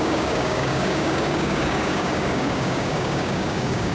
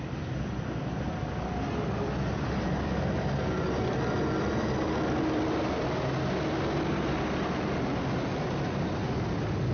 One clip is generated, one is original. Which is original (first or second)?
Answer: second